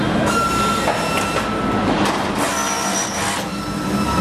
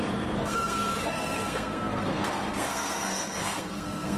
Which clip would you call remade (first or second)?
second